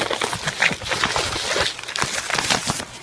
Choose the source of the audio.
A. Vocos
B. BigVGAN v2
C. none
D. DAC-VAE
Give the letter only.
C